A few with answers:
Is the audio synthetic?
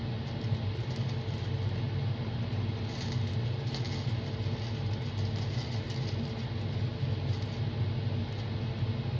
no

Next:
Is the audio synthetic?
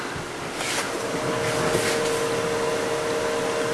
no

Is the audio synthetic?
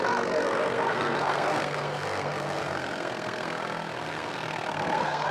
yes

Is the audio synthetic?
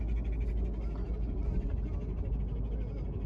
no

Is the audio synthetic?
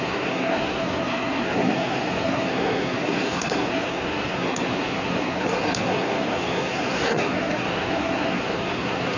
yes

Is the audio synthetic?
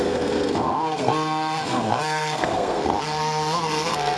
yes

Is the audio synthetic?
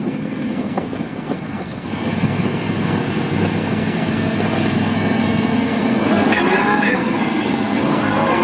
yes